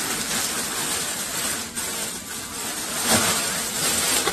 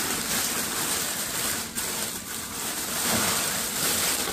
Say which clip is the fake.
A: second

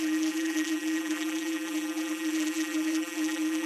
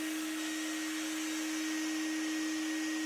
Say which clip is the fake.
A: first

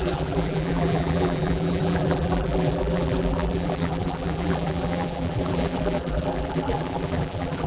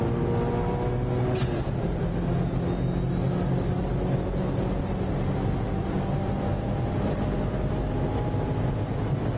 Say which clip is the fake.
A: first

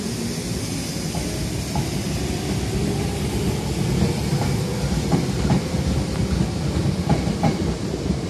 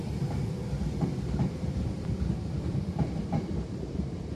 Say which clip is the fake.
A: second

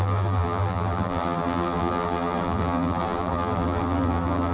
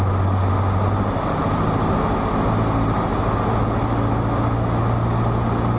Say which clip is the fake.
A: first